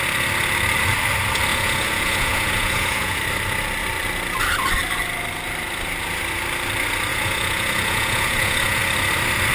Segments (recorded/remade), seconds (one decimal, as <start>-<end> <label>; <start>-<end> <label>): 0.0-1.5 recorded; 1.5-3.2 remade; 3.2-7.1 recorded; 7.1-8.8 remade; 8.8-9.5 recorded